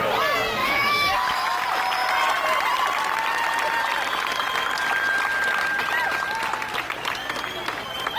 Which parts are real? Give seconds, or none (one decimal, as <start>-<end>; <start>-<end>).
0.0-0.6; 1.6-8.2